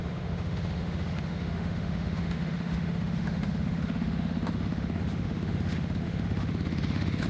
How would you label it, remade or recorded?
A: remade